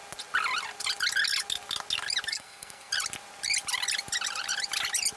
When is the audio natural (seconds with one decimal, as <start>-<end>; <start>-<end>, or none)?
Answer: 0.0-2.3; 2.9-5.2